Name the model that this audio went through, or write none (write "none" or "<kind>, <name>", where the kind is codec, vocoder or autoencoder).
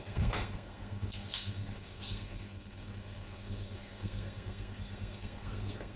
codec, SNAC